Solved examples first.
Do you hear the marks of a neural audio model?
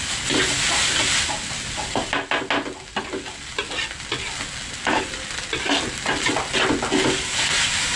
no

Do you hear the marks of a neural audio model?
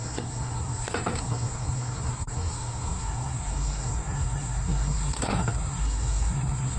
yes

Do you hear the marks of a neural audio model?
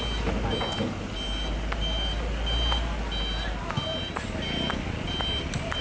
no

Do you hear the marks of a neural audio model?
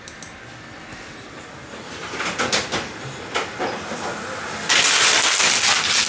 no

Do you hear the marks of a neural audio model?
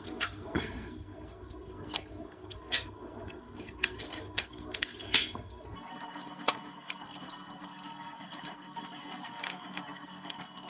yes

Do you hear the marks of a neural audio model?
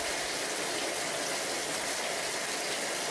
no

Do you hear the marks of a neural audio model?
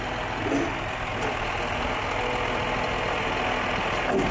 no